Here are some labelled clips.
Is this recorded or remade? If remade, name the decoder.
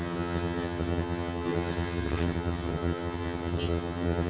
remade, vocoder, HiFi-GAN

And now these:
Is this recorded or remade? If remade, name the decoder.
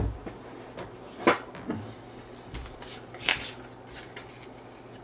recorded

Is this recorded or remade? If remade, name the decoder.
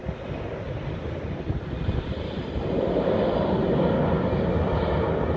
recorded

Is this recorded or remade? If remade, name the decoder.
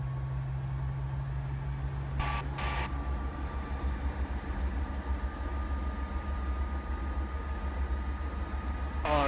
recorded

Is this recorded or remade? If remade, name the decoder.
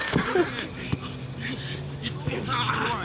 recorded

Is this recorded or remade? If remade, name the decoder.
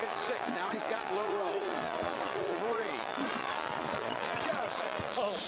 remade, vocoder, Vocos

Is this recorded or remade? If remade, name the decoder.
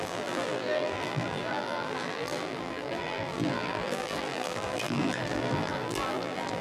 remade, vocoder, BigVGAN v2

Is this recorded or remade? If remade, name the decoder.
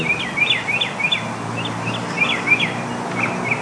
recorded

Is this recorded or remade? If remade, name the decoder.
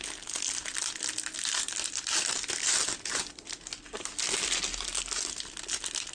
recorded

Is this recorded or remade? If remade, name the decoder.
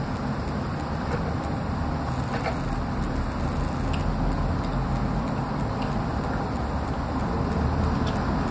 recorded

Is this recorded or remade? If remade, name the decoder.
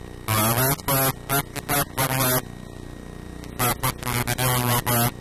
recorded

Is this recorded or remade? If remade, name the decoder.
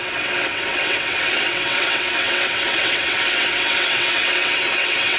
remade, vocoder, WaveNeXt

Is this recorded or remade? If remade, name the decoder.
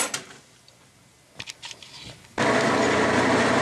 recorded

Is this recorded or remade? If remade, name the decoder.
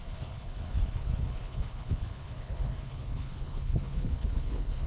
remade, codec, HILCodec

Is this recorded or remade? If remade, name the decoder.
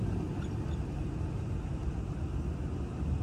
recorded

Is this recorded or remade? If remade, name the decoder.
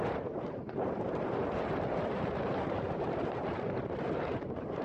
remade, vocoder, BigVGAN v2